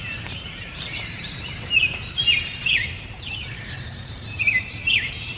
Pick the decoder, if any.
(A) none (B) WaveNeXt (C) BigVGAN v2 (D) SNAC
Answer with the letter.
C